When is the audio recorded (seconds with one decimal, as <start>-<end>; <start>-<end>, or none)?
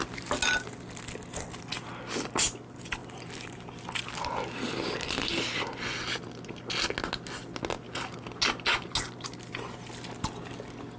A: 0.0-11.0